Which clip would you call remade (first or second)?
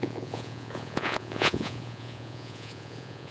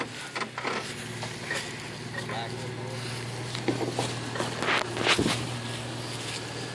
first